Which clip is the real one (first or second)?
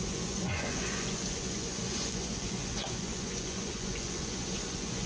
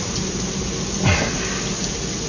second